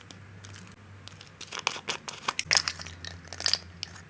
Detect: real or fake real